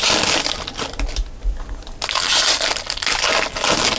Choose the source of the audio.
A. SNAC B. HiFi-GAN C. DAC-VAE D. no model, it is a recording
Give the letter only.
D